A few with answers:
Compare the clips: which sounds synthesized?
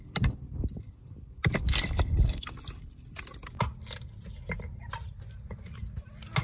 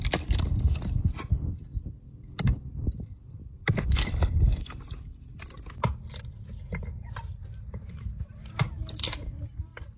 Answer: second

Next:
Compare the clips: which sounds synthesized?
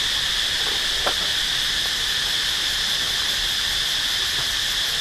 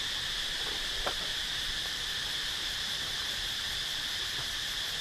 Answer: second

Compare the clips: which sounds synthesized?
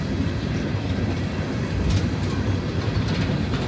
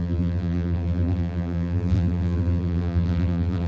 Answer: second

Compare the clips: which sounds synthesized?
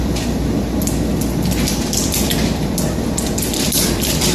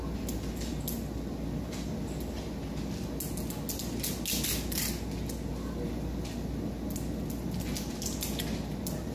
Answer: first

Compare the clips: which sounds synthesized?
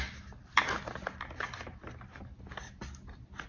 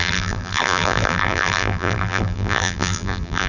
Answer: second